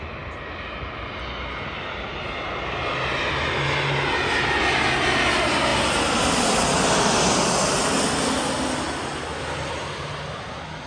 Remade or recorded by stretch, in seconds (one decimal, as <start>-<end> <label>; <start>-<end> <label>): 0.0-10.9 recorded